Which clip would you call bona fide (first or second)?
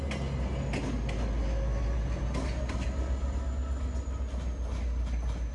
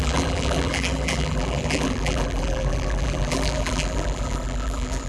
first